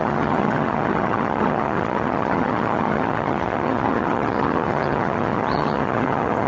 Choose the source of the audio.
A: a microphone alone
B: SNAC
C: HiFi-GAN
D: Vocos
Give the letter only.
C